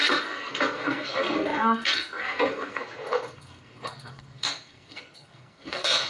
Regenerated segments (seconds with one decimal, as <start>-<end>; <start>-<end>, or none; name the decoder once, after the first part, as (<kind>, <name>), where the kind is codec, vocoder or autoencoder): 0.0-6.1 (codec, SNAC)